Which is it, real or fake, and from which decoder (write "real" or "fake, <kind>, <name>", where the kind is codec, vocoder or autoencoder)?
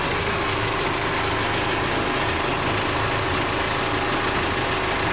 real